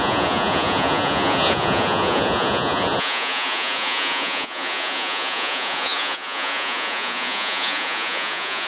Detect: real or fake fake